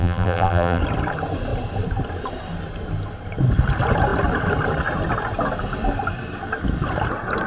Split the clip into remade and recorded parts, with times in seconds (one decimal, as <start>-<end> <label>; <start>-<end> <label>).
0.0-0.8 remade; 0.8-7.5 recorded